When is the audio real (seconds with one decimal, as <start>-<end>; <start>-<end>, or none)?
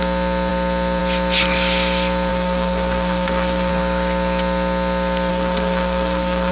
0.0-2.3; 3.7-5.3